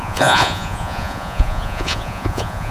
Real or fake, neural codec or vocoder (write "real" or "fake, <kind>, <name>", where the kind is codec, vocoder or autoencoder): fake, vocoder, Vocos